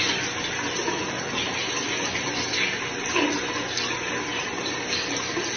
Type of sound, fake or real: real